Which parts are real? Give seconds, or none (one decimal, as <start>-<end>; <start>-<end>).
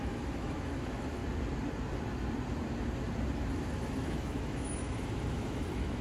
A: 1.2-3.5